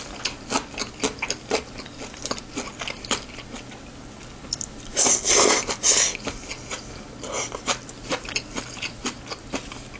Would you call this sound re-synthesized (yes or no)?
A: no